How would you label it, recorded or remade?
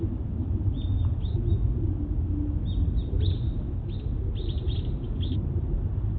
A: recorded